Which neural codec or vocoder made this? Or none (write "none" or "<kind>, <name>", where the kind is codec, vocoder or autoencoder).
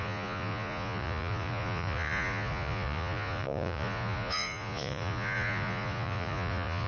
vocoder, Vocos